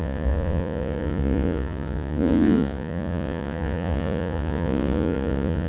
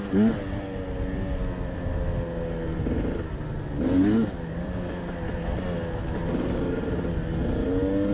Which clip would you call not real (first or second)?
first